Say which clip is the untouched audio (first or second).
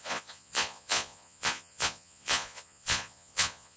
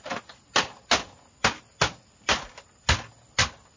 second